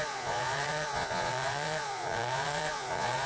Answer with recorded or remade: remade